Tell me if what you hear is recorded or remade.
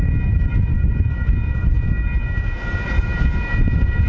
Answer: recorded